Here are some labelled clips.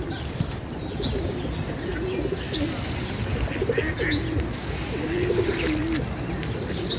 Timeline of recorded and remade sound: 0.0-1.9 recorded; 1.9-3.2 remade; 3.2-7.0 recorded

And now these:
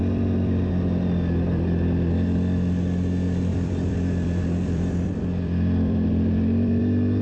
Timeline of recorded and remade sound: 0.0-0.7 remade; 0.7-3.5 recorded; 3.5-6.8 remade; 6.8-7.2 recorded